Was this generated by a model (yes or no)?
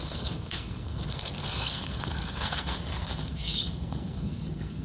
yes